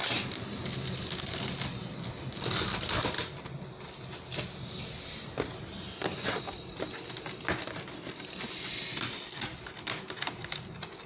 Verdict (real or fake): real